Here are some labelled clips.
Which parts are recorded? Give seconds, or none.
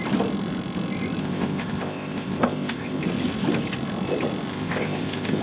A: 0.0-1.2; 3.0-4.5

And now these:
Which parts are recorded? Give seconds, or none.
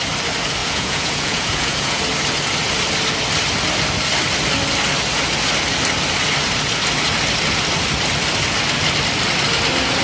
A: 0.0-0.6; 2.0-10.0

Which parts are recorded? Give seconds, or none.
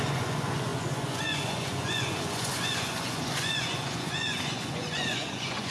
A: none